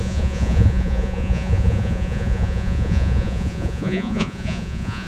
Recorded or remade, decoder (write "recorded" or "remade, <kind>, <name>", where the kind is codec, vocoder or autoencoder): remade, vocoder, Vocos